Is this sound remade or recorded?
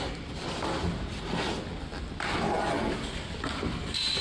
recorded